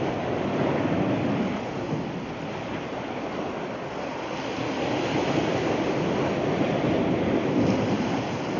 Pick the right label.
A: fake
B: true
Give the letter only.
B